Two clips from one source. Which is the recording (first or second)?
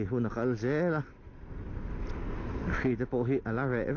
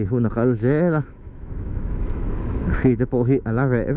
first